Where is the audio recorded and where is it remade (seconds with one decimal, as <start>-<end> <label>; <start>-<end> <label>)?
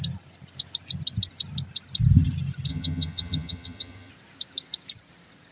0.0-2.7 recorded; 2.7-4.1 remade; 4.1-5.5 recorded